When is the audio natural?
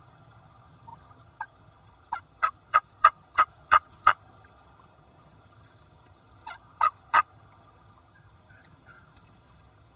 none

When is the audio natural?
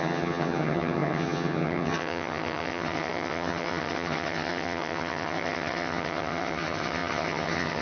none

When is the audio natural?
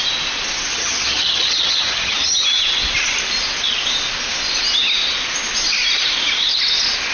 0.0-0.7; 2.6-7.1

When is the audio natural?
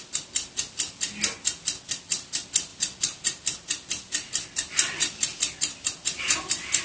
0.0-6.8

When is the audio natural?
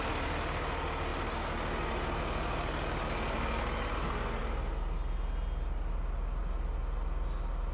0.0-7.7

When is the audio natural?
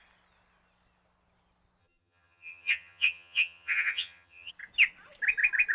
0.0-1.8; 4.5-5.7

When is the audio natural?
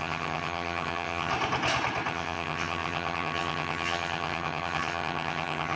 1.3-2.1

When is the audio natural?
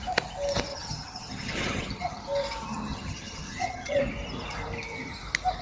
0.0-0.7; 2.2-2.9; 4.0-5.6